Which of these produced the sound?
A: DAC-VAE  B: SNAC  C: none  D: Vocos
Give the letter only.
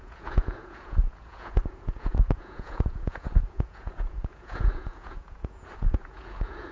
D